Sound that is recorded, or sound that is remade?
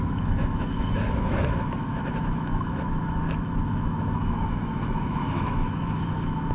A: remade